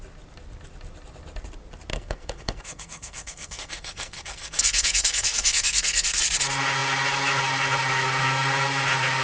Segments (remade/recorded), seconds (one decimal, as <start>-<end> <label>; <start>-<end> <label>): 0.0-1.9 recorded; 1.9-6.2 remade; 6.2-9.2 recorded